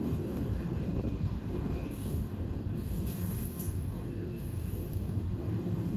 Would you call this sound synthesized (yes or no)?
yes